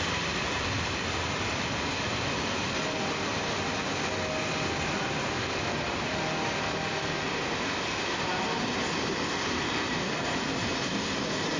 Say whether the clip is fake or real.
real